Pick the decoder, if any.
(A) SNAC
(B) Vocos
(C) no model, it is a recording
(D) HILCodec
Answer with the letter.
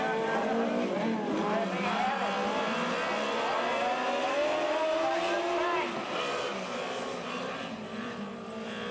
C